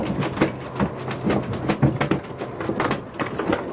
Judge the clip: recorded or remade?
recorded